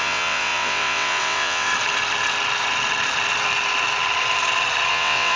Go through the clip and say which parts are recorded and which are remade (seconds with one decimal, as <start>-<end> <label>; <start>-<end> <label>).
0.0-1.7 remade; 1.7-4.9 recorded; 4.9-5.4 remade